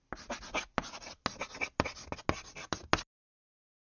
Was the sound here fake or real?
real